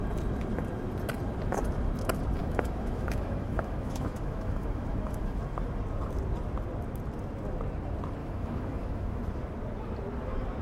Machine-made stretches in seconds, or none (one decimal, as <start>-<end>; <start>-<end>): 2.4-5.4; 8.2-9.2